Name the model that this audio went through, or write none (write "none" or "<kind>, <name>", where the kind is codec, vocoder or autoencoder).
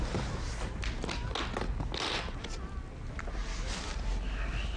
none